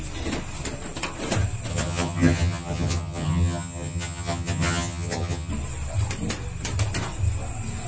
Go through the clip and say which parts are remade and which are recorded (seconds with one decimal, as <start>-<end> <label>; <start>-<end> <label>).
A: 0.0-1.7 recorded; 1.7-5.5 remade; 5.5-7.9 recorded